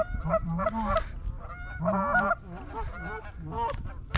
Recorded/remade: recorded